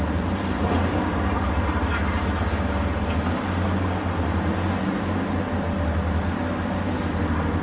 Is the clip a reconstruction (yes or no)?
no